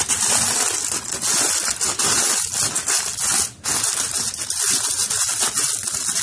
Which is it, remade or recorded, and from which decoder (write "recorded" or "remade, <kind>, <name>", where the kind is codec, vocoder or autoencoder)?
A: recorded